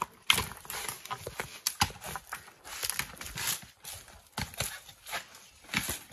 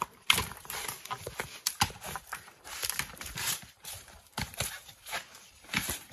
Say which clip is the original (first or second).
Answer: first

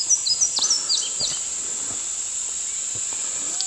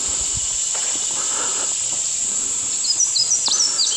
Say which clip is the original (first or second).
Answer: first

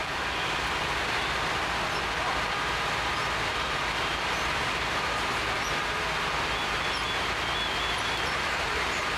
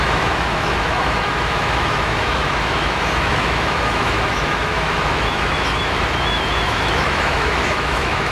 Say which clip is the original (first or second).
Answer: first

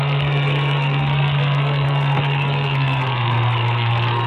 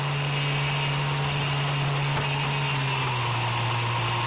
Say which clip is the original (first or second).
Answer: second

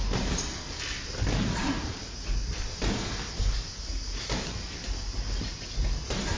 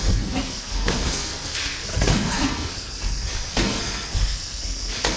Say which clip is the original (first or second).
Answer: first